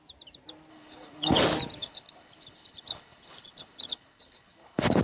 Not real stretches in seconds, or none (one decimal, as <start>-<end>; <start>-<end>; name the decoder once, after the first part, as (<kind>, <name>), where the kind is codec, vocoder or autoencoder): 0.7-1.4 (codec, HILCodec); 1.8-5.0

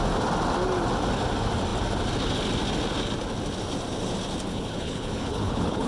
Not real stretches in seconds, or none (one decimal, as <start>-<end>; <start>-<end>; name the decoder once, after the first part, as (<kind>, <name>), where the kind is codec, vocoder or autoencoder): 4.5-5.9 (codec, HILCodec)

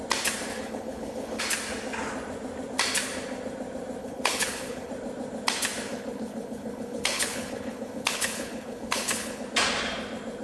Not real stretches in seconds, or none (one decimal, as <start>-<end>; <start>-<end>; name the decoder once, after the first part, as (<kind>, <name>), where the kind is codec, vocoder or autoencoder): 0.5-1.4 (codec, HILCodec); 4.0-4.9; 5.9-9.4

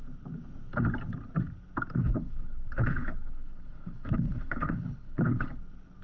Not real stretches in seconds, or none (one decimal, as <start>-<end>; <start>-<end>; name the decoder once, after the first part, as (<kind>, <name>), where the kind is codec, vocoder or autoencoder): 2.0-5.6 (codec, HILCodec)

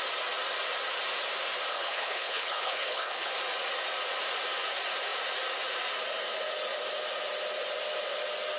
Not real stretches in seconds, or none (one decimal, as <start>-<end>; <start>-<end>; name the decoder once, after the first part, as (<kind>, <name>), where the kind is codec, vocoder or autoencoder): 1.7-3.3 (codec, HILCodec)

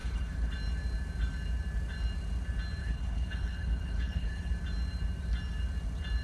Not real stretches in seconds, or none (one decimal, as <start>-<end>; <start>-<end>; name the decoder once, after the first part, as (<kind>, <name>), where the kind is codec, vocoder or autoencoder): 0.0-0.5 (codec, HILCodec); 2.8-4.5

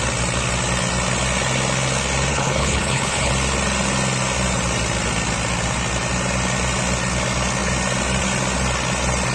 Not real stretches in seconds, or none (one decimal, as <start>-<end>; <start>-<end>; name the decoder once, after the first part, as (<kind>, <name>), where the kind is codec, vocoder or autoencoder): 2.3-3.3 (codec, HILCodec)